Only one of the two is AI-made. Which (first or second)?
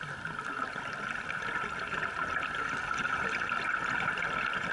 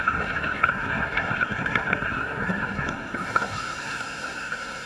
second